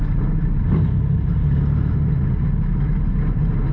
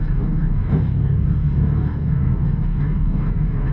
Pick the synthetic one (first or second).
second